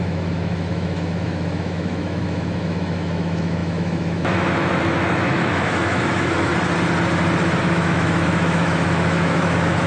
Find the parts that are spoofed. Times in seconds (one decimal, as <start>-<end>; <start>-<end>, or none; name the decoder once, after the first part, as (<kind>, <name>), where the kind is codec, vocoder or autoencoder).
0.0-6.5 (autoencoder, DAC-VAE); 7.6-9.9